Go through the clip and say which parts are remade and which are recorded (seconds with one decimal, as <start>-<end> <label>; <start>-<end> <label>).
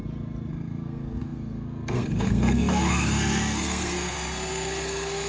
0.0-0.5 recorded; 0.5-5.3 remade